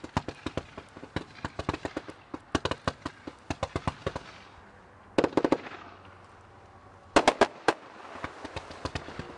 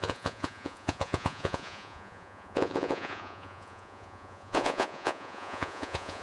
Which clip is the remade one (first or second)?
second